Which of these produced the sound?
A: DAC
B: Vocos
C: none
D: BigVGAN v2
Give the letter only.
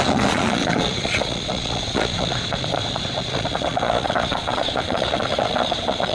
B